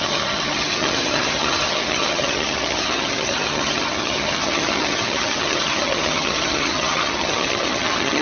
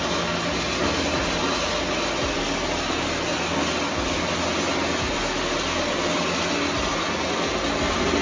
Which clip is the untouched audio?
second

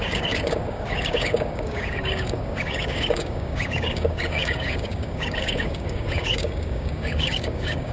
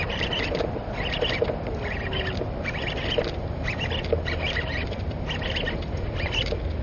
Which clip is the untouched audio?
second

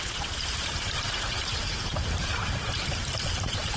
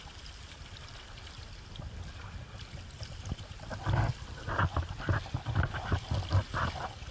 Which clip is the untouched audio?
second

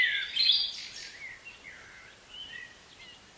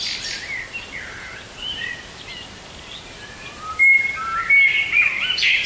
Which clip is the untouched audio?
first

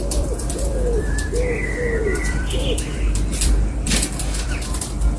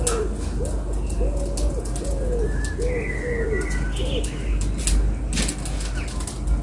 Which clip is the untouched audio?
second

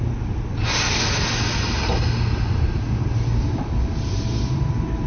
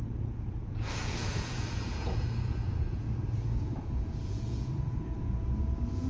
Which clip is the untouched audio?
first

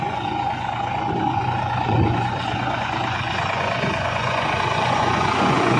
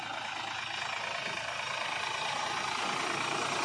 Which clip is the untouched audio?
second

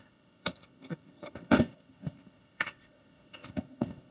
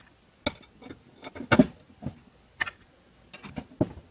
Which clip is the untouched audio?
second